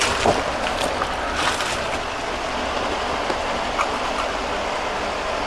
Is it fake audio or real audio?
real